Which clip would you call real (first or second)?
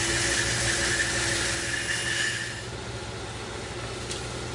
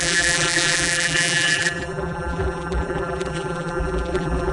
first